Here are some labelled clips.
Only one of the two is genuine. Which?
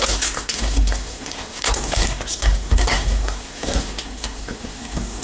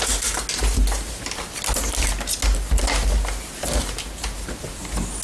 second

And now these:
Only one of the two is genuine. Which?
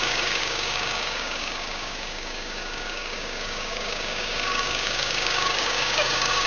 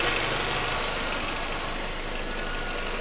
second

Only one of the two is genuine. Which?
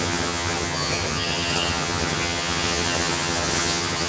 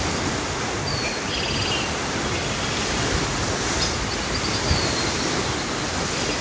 second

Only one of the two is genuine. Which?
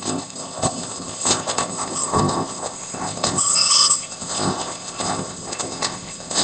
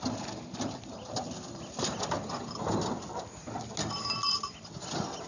second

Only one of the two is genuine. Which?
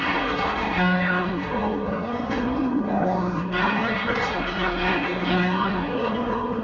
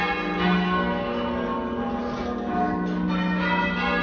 second